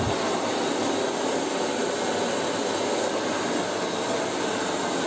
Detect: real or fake real